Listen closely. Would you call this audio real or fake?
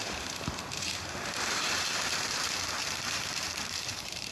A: fake